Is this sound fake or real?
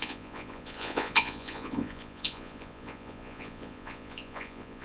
fake